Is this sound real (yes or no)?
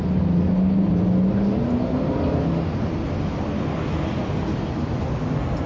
yes